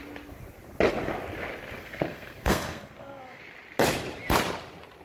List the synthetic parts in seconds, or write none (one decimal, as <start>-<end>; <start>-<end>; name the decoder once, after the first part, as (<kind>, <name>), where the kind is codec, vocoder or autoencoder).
1.8-3.4 (codec, SNAC)